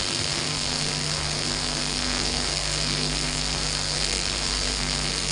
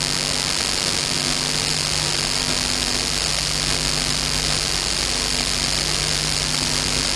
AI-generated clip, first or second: first